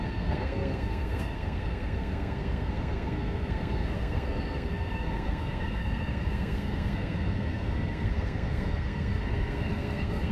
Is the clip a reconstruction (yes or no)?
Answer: yes